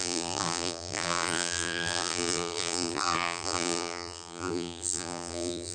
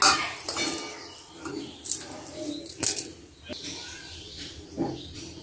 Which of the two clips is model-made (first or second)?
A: first